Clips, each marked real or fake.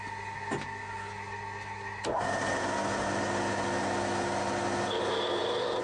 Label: real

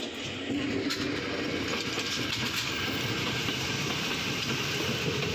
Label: real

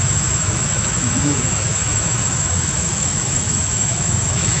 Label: fake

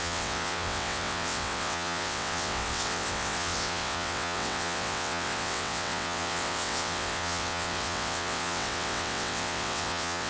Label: fake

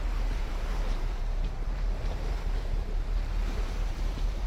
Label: fake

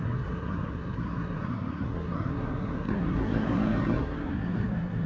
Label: fake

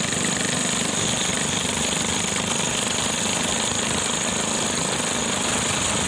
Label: real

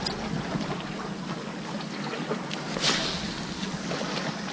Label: real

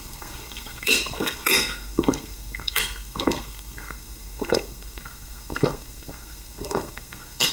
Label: fake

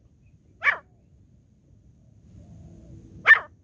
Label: real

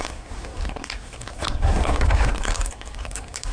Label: fake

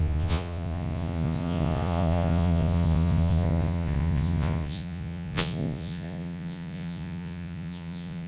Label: fake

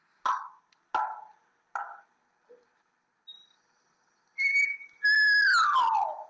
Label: real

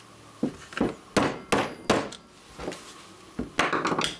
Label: real